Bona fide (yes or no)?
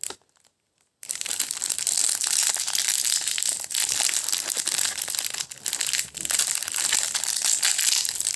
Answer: yes